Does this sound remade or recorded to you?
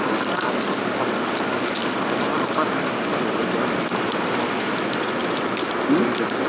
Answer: recorded